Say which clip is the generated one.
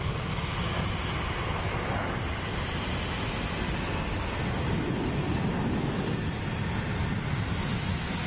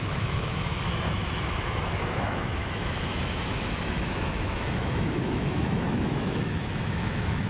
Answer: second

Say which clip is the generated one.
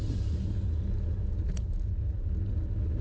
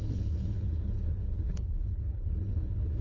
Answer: second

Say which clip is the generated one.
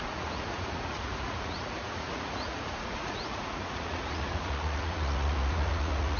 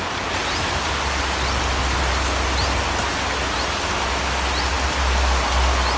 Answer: first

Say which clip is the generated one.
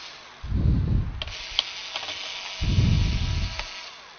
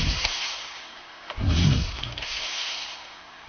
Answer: second